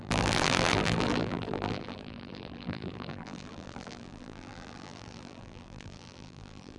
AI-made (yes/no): yes